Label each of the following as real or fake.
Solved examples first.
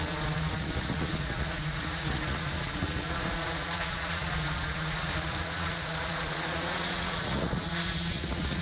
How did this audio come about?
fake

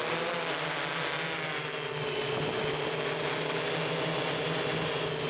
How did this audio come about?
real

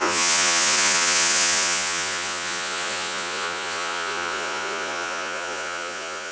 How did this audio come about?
fake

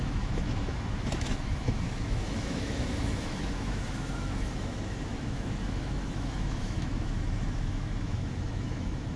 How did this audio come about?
fake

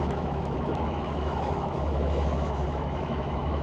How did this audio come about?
fake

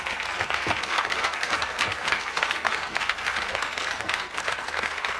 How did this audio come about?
fake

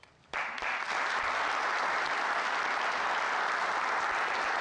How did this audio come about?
real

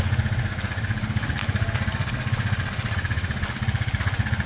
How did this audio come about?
real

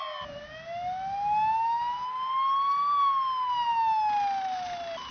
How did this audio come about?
real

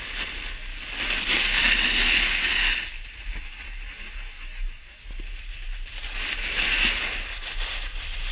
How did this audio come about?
real